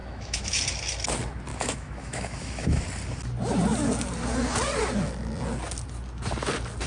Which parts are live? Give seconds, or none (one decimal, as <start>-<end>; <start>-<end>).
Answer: 0.6-1.5; 2.8-6.9